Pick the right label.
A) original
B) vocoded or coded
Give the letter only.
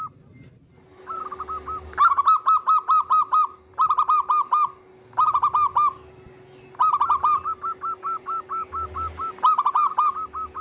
A